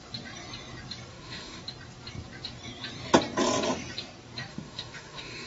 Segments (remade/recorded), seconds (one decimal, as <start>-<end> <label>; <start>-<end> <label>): 0.0-1.1 recorded; 1.1-1.6 remade; 1.6-4.5 recorded; 4.5-5.5 remade